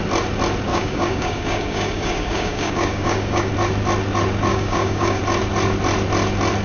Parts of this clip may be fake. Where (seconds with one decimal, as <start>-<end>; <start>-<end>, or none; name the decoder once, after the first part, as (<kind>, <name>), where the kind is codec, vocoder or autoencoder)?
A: 0.7-3.5 (codec, DAC); 4.5-5.2